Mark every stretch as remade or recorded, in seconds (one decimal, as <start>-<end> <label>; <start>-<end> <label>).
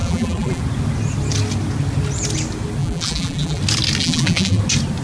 0.0-0.6 remade; 0.6-2.8 recorded; 2.8-3.6 remade; 3.6-4.0 recorded; 4.0-4.6 remade; 4.6-5.0 recorded